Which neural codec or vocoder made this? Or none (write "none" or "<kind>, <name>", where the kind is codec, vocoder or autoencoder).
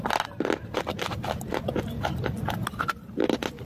none